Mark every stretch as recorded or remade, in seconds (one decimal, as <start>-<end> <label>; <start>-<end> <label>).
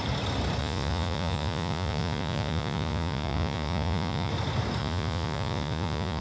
0.0-0.6 recorded; 0.6-4.3 remade; 4.3-4.8 recorded; 4.8-6.2 remade